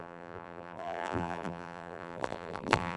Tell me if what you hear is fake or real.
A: fake